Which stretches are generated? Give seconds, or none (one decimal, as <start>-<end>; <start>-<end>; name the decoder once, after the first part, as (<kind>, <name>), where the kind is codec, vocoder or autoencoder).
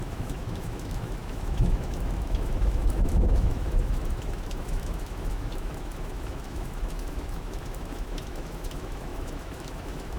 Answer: 0.0-10.2 (autoencoder, DAC-VAE)